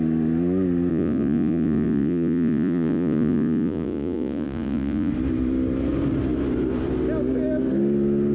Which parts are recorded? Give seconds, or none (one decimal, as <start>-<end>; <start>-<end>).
0.0-0.9; 5.1-8.3